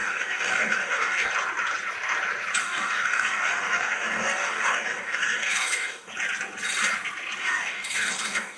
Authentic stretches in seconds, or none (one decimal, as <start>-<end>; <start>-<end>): 1.3-2.6; 6.1-7.4